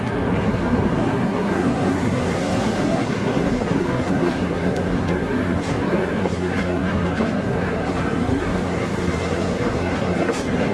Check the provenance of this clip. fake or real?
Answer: fake